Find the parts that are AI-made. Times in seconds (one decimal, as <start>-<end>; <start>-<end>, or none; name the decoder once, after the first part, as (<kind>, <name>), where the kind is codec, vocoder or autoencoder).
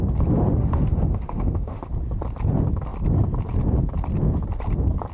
0.6-1.8 (autoencoder, DAC-VAE)